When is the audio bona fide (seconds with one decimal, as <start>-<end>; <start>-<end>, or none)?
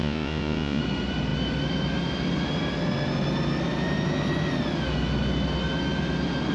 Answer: 0.8-6.5